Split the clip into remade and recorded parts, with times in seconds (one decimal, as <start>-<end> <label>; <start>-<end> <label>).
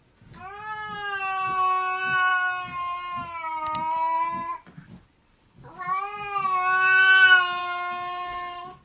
0.0-8.8 recorded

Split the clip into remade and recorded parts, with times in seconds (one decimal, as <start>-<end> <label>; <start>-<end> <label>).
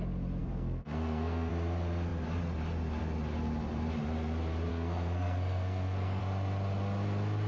0.0-0.4 recorded; 0.4-1.5 remade; 1.5-4.7 recorded; 4.7-6.2 remade; 6.2-7.5 recorded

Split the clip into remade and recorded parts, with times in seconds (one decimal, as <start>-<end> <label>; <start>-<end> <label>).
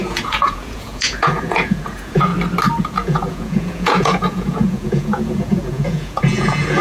0.0-2.3 remade; 2.3-2.8 recorded; 2.8-6.8 remade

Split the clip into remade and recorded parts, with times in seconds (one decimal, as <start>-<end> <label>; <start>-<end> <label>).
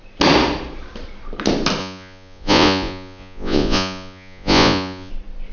0.0-1.8 recorded; 1.8-5.1 remade; 5.1-5.5 recorded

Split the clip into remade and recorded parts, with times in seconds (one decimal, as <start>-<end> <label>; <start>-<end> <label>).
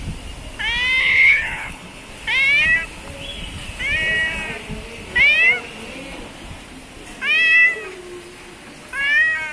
0.0-1.0 recorded; 1.0-2.1 remade; 2.1-9.5 recorded